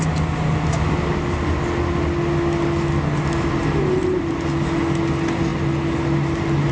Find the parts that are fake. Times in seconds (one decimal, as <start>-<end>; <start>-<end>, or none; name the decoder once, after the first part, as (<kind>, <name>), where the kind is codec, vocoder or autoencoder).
none